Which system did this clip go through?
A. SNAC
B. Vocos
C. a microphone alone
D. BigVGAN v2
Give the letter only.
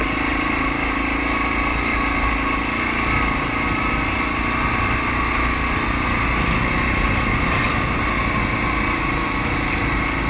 C